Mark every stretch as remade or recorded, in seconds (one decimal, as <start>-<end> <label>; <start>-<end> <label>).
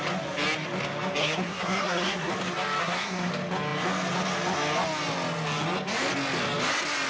0.0-1.2 recorded; 1.2-2.3 remade; 2.3-2.8 recorded; 2.8-3.3 remade; 3.3-7.1 recorded